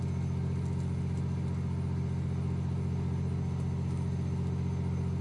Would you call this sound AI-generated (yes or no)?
no